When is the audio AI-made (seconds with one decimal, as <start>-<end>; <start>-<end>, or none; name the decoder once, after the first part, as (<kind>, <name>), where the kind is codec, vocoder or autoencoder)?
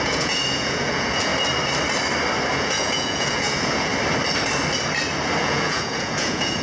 0.0-1.3 (vocoder, Vocos); 2.5-3.9; 5.4-6.6